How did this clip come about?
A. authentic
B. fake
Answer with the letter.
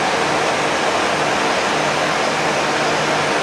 A